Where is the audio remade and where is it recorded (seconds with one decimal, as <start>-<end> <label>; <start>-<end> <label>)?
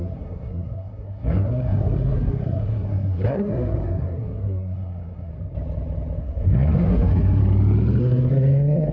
0.0-5.3 remade; 5.3-6.2 recorded; 6.2-7.4 remade; 7.4-8.0 recorded; 8.0-8.9 remade